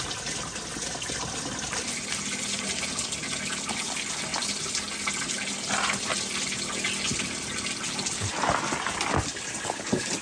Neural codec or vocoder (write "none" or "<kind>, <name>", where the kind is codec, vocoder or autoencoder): none